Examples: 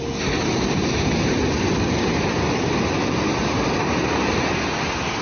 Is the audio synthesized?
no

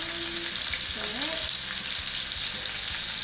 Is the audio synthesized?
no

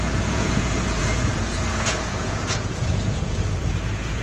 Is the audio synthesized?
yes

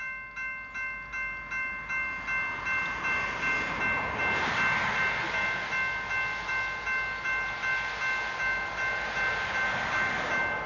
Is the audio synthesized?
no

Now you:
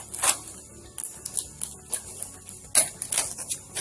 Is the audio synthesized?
no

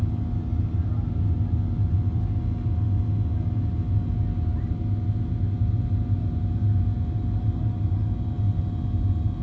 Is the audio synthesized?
no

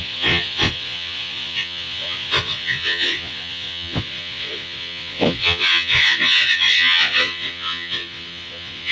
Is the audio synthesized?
yes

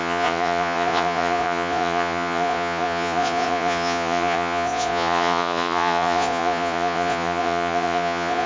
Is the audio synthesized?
yes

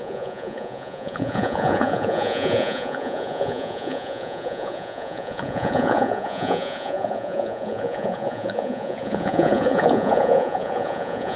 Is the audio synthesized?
yes